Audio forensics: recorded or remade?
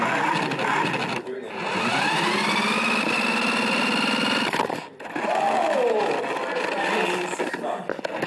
recorded